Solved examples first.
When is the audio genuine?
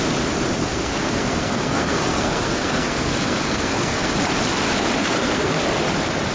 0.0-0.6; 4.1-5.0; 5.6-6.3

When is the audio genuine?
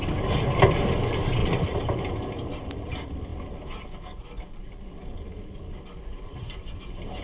0.0-1.4; 2.9-7.2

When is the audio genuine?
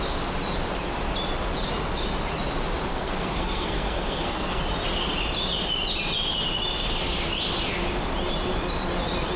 0.0-2.9; 4.6-9.4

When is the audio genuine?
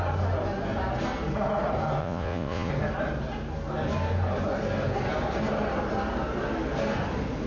0.0-2.0; 2.7-7.5